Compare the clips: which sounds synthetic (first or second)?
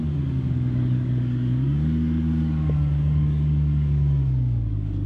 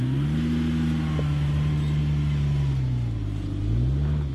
first